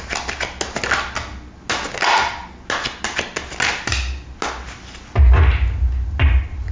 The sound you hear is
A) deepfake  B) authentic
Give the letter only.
B